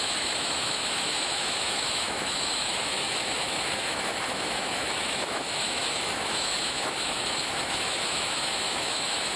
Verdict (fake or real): fake